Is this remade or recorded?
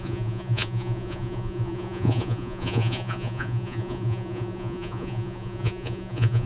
remade